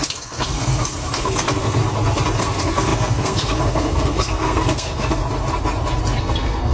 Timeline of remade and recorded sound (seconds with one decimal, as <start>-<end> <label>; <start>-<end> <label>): 0.0-1.8 remade; 1.8-2.4 recorded; 2.4-5.2 remade; 5.2-6.2 recorded; 6.2-6.7 remade